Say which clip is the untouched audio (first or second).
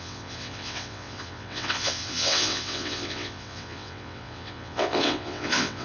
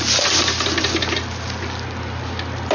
second